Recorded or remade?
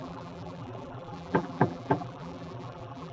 remade